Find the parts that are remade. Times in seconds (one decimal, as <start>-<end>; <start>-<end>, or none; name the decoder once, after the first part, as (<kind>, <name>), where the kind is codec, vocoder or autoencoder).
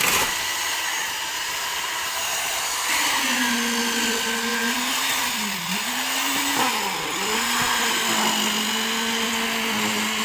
1.0-2.8 (vocoder, BigVGAN v2); 4.5-5.0